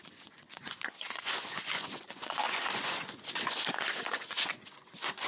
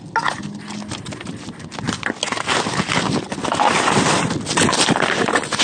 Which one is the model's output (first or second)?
first